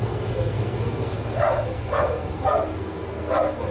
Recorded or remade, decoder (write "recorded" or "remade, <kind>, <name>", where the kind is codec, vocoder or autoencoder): remade, codec, SNAC